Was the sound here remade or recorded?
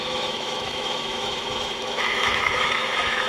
remade